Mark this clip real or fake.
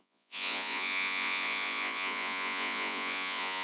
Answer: fake